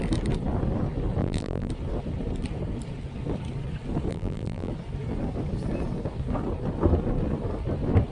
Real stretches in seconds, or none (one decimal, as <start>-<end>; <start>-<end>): 0.0-1.2; 1.7-4.1; 4.7-8.1

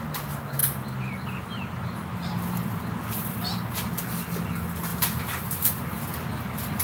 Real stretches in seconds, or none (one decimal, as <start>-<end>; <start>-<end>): 0.0-0.6; 2.8-4.9; 6.0-6.8